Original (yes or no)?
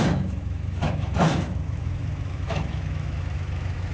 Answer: no